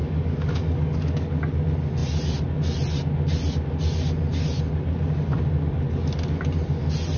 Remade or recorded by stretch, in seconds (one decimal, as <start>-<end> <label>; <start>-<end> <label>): 0.0-1.4 remade; 1.4-7.2 recorded